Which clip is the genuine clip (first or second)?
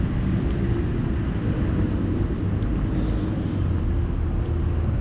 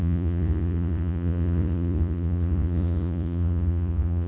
first